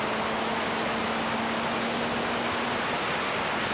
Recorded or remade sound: recorded